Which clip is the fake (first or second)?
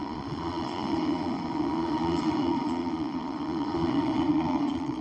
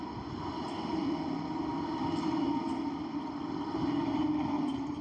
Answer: first